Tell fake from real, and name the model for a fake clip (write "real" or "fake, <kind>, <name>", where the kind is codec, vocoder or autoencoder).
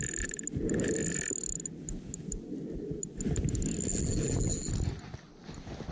real